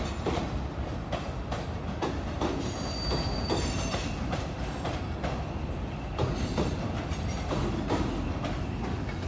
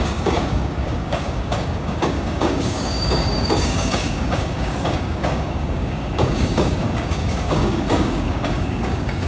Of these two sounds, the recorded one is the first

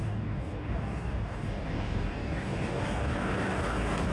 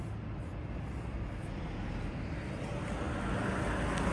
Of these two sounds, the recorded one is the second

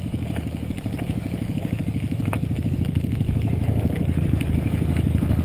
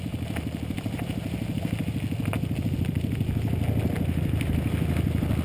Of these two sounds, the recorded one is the second